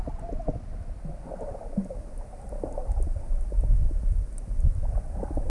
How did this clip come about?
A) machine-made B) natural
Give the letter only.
B